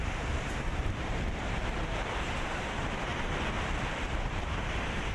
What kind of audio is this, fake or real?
fake